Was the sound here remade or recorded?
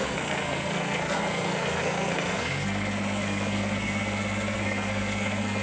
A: remade